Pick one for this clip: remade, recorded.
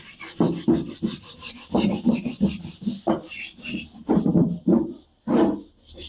remade